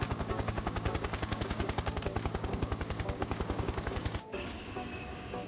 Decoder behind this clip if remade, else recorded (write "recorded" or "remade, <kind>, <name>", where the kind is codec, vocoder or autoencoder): remade, codec, DAC